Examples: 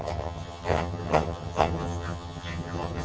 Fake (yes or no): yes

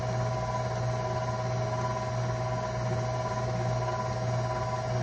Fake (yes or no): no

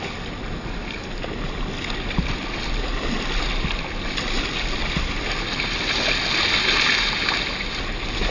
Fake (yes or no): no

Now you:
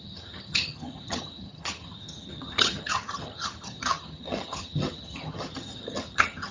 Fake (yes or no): yes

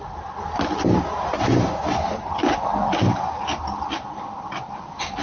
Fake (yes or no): no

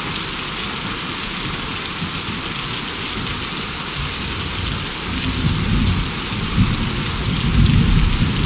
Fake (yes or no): no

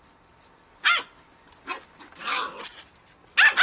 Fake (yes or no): no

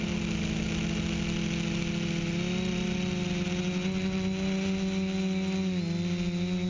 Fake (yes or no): no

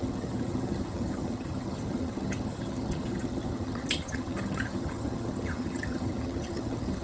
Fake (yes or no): yes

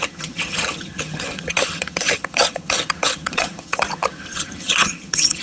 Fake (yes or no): yes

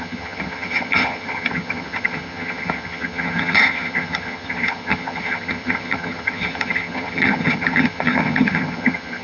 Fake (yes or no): yes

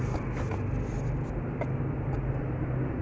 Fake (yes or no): no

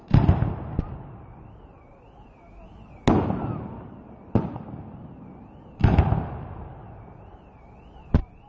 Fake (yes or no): no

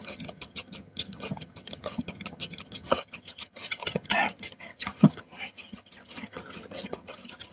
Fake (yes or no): yes